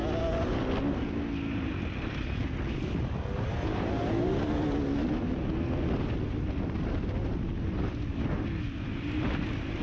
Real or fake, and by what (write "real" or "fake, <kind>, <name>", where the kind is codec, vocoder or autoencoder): real